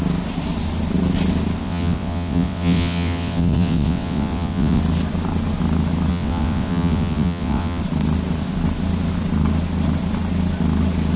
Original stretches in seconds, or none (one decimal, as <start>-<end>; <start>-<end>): 0.0-1.6; 4.8-6.1; 7.8-11.2